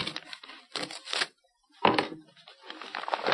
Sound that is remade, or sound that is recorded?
recorded